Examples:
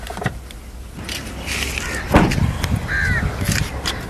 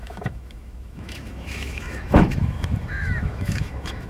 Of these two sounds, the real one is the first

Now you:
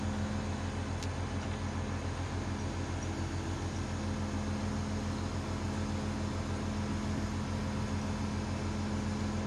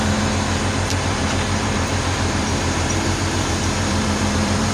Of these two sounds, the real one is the first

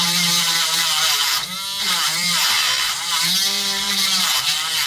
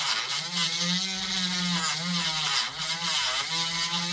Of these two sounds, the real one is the second